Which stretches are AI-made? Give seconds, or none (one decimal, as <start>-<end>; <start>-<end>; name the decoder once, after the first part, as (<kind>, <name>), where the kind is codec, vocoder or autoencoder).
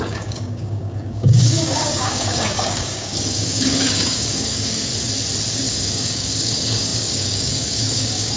0.0-4.9 (codec, DAC); 5.5-8.4